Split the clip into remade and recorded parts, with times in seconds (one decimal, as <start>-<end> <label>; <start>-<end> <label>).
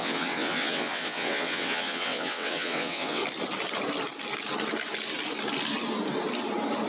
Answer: 0.0-3.2 remade; 3.2-6.9 recorded